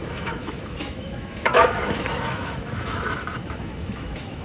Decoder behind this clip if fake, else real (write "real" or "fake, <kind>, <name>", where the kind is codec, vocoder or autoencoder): fake, autoencoder, DAC-VAE